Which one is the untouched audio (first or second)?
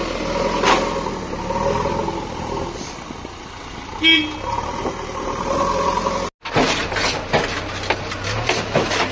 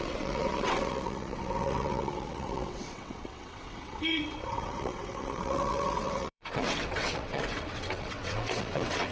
first